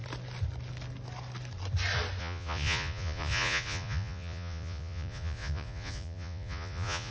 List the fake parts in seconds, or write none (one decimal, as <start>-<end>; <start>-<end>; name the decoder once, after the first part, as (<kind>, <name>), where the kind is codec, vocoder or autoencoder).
2.2-7.1 (vocoder, Vocos)